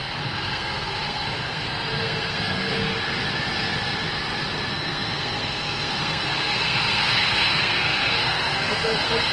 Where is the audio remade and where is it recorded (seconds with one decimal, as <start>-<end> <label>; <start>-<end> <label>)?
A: 0.0-2.8 remade; 2.8-4.7 recorded; 4.7-9.3 remade